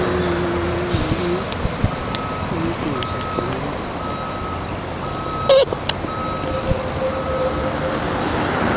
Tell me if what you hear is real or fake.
real